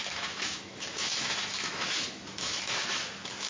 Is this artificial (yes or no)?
yes